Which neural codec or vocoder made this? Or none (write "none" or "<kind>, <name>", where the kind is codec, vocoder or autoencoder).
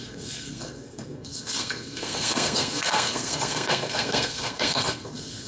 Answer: codec, SNAC